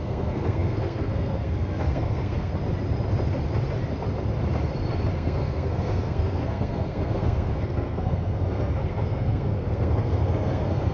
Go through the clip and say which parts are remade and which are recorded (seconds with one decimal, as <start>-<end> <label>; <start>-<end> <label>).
0.0-2.5 remade; 2.5-5.1 recorded; 5.1-10.9 remade